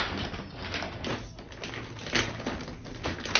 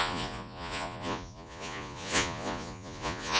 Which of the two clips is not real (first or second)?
second